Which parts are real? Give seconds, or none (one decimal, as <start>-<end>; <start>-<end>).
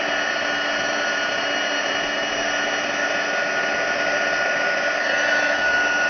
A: 0.0-6.1